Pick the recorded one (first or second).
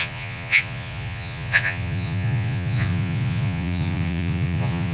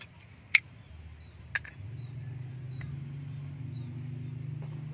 second